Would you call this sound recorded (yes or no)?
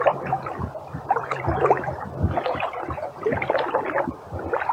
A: no